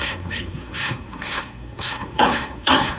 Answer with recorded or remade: remade